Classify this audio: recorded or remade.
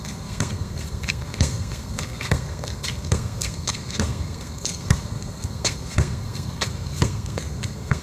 remade